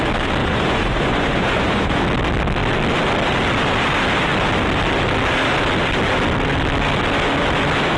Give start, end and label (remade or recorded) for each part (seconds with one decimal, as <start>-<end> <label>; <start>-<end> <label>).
0.0-0.4 recorded; 0.4-2.0 remade; 2.0-8.0 recorded